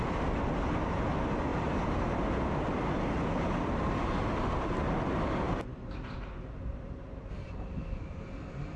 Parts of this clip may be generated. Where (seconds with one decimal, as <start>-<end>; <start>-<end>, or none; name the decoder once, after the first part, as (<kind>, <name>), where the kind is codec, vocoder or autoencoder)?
1.5-2.3 (vocoder, BigVGAN v2); 5.7-7.7